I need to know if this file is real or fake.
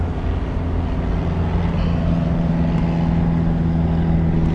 real